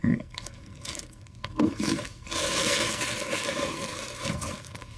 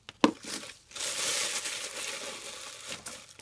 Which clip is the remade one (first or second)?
first